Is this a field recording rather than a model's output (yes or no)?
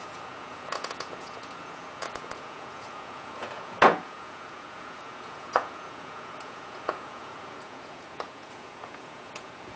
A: no